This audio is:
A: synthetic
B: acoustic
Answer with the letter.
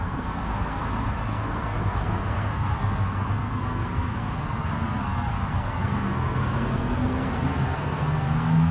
A